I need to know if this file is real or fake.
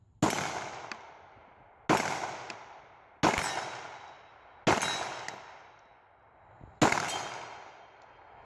real